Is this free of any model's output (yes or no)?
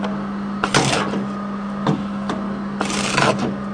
yes